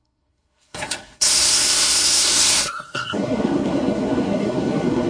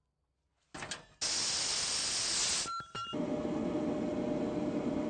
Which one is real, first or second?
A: second